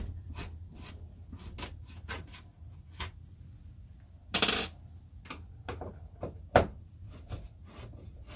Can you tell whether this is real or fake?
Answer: real